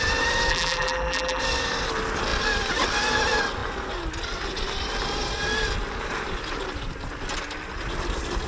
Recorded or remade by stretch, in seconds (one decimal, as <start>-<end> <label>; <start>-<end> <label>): 0.0-0.5 recorded; 0.5-1.4 remade; 1.4-8.5 recorded